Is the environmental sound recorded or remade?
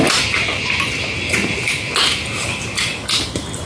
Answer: recorded